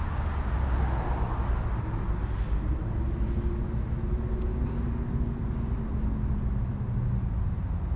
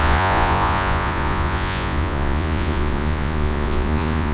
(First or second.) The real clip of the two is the first